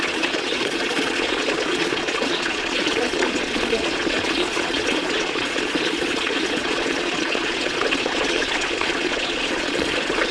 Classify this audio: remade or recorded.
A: remade